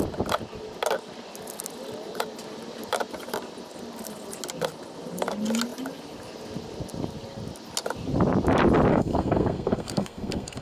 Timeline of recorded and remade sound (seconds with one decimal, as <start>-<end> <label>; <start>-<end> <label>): 0.0-8.9 recorded; 8.9-10.6 remade